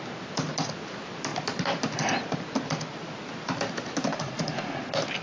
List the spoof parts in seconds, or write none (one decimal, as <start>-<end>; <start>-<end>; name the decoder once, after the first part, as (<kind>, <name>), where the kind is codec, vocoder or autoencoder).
4.1-4.8 (vocoder, Vocos)